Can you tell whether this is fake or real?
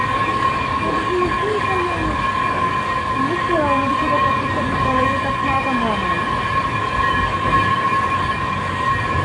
fake